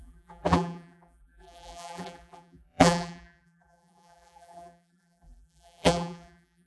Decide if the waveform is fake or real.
fake